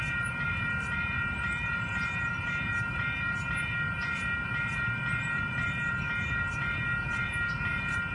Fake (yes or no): yes